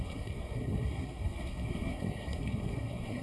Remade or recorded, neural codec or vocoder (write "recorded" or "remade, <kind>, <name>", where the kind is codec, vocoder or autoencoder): remade, codec, SNAC